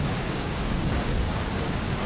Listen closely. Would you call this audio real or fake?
fake